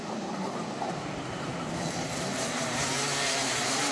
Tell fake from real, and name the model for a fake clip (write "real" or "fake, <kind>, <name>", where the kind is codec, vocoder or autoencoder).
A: fake, vocoder, BigVGAN v2